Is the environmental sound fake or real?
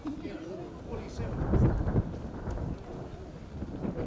real